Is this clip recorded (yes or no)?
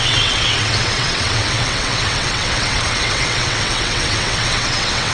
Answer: no